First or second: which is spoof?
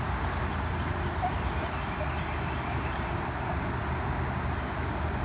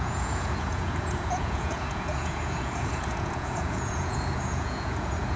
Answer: second